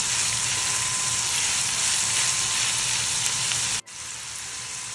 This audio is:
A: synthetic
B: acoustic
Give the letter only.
B